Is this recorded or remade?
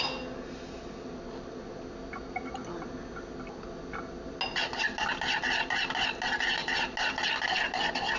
recorded